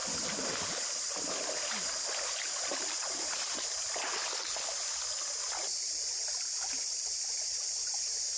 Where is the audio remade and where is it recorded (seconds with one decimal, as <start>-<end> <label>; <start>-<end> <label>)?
0.0-3.1 remade; 3.1-8.4 recorded